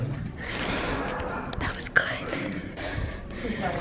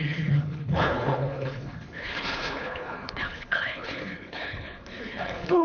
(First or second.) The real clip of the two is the first